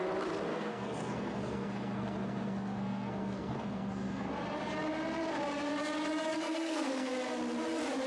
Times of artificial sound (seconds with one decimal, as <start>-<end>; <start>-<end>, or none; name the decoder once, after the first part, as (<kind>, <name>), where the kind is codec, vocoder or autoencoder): 0.5-4.3 (codec, SNAC); 6.3-7.1